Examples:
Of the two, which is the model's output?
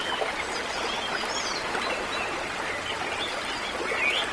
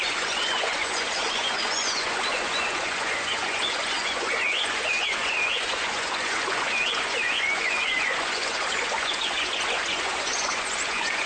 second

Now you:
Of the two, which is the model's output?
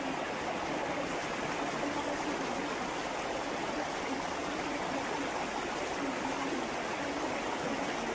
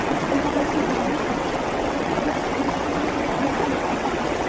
second